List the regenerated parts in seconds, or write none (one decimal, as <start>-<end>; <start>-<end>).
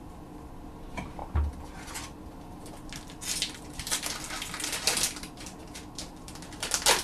none